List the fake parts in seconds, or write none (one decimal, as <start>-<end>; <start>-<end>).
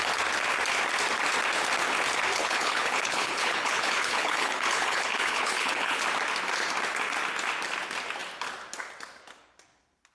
2.4-6.0